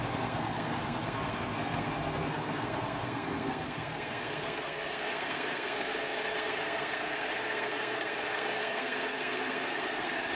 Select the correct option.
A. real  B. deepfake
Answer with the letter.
B